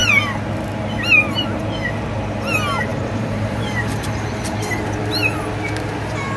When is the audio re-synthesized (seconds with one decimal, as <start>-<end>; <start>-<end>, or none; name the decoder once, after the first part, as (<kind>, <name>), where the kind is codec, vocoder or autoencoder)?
2.9-4.6 (vocoder, BigVGAN v2)